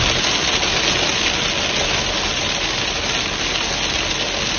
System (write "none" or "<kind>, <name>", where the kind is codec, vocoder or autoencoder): none